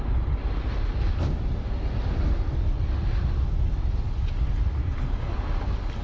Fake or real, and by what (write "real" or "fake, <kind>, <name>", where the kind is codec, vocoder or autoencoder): real